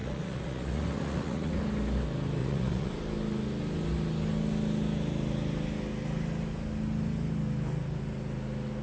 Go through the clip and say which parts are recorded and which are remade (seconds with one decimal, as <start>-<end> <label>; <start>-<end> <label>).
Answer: 0.0-1.6 remade; 1.6-2.4 recorded; 2.4-2.9 remade; 2.9-8.8 recorded